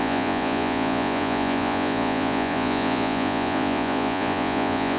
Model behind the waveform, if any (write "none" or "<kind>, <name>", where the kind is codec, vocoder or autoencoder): vocoder, Vocos